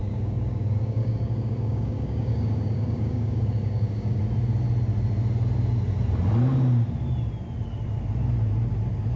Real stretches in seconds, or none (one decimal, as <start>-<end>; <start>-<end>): 4.2-9.2

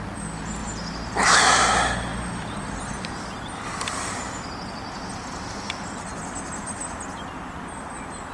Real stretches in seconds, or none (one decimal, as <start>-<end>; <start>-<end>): 0.0-0.6; 1.1-2.1; 5.0-8.3

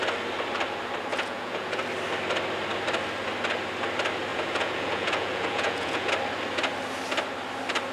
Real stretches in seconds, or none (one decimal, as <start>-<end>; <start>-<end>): 0.0-1.1; 1.8-4.3; 6.1-7.9

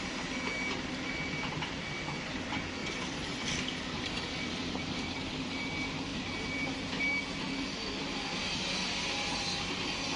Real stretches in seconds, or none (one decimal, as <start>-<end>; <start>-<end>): 0.0-2.8; 5.6-10.2

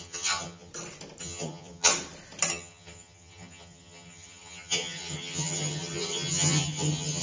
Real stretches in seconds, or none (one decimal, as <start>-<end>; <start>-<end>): 0.7-1.2; 1.9-2.5

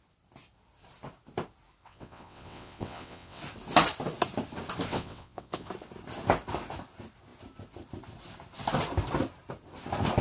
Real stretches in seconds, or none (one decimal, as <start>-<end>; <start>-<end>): 0.0-1.8; 3.4-4.9; 5.7-10.2